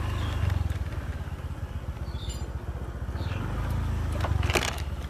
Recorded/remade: recorded